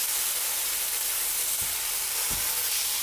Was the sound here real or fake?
real